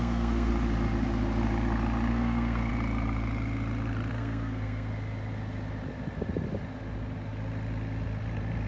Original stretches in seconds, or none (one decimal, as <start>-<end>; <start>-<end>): 0.5-2.1; 2.7-4.1; 4.9-8.7